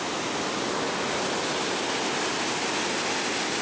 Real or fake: real